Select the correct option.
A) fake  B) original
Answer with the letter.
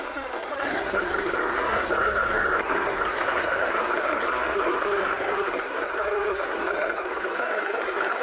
A